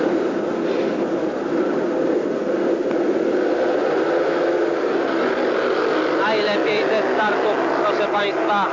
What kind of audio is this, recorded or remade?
recorded